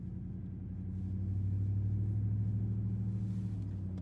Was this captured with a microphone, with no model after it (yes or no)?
yes